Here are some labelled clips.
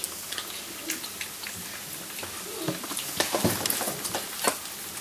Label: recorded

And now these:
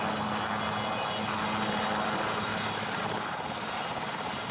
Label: recorded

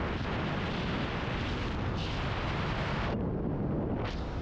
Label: recorded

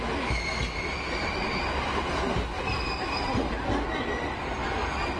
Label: recorded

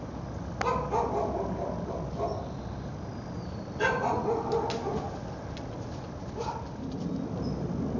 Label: recorded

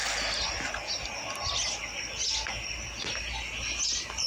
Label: recorded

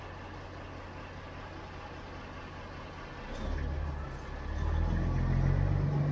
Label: recorded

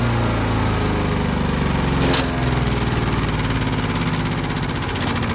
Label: recorded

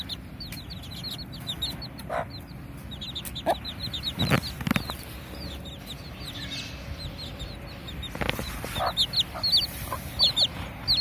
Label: recorded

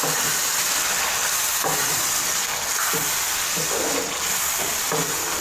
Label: recorded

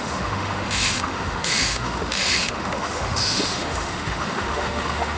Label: remade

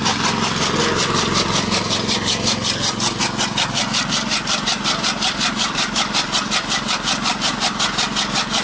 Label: recorded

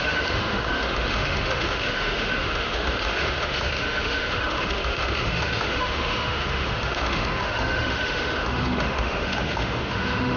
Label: remade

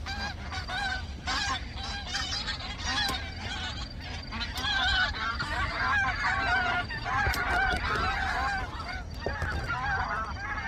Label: recorded